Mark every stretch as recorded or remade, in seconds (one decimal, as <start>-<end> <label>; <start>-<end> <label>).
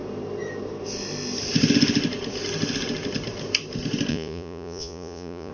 0.0-4.1 recorded; 4.1-5.5 remade